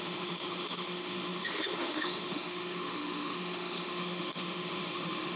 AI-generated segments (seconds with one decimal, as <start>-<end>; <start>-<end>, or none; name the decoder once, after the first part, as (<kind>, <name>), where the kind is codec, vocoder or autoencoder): 0.0-5.4 (autoencoder, DAC-VAE)